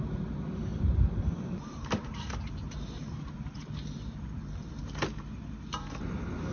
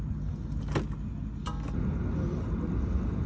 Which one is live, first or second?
second